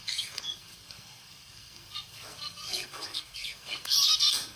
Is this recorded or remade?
remade